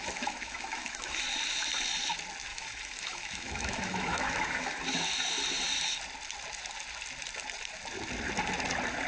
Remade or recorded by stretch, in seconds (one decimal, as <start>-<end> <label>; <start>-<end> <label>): 0.0-1.1 remade; 1.1-2.5 recorded; 2.5-4.8 remade; 4.8-9.1 recorded